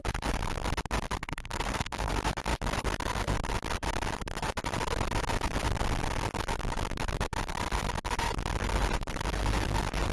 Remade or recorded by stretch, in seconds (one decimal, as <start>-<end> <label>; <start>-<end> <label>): 0.0-1.2 recorded; 1.2-2.1 remade; 2.1-10.1 recorded